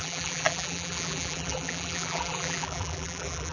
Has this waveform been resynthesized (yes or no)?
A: yes